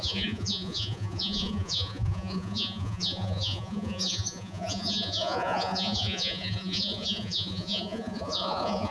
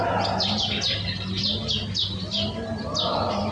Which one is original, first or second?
second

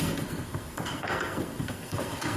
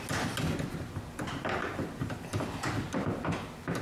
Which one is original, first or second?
second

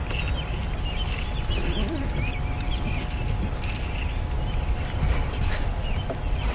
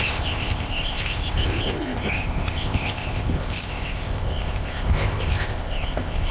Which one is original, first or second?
first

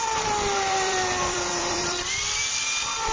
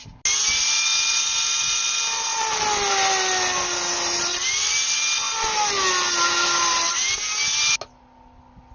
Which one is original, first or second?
second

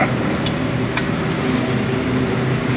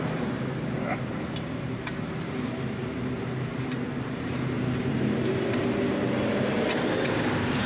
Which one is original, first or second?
first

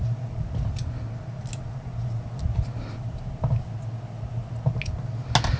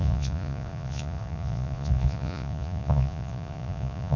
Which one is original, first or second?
first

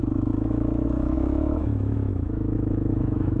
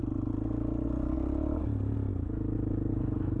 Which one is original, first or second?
second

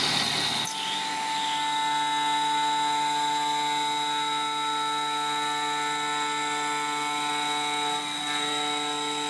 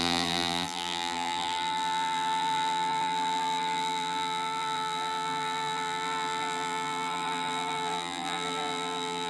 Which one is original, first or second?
first